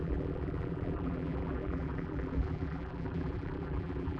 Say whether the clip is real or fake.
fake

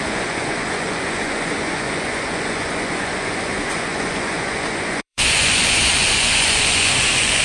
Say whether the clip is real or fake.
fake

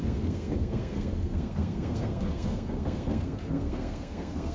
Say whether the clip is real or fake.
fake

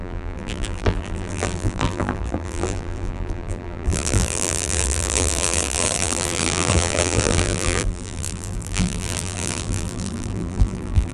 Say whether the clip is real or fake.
fake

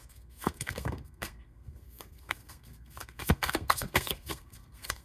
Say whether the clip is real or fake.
fake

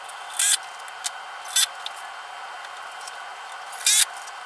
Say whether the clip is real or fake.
real